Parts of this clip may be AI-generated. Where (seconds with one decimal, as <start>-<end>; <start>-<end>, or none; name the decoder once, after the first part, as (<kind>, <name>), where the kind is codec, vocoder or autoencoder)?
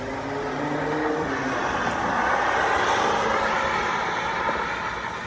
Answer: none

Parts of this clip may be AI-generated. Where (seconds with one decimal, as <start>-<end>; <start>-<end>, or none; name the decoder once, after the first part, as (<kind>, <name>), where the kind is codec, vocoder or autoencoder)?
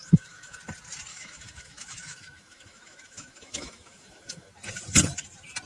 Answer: 0.0-0.6 (autoencoder, DAC-VAE); 1.1-4.5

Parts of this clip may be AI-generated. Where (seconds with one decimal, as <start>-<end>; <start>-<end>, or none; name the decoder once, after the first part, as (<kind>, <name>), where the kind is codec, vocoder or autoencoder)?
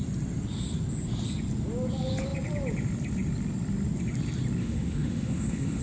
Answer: 4.6-5.8 (autoencoder, DAC-VAE)